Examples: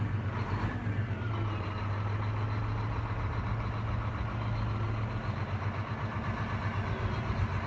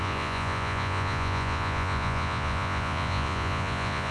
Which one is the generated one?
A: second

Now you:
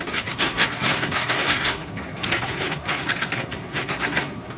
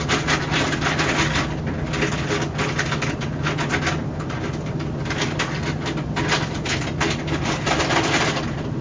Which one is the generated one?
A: first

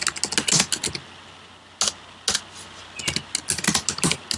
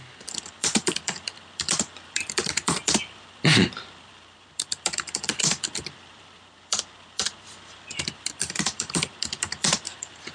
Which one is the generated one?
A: second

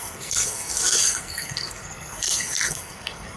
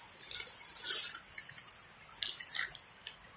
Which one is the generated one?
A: first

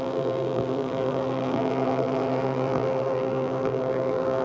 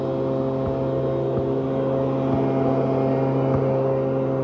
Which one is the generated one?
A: first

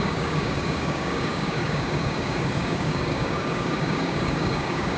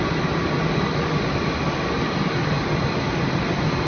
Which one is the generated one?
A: first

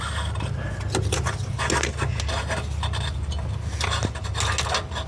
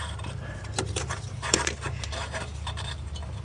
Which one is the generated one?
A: second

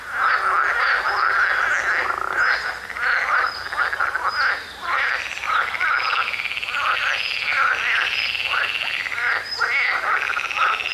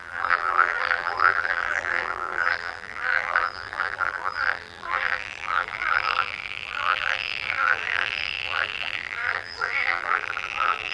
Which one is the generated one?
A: second